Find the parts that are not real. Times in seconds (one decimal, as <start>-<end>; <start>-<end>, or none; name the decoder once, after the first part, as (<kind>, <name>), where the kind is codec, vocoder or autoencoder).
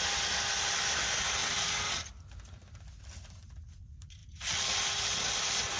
none